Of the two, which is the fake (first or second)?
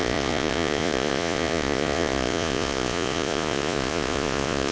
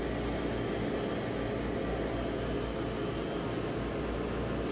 first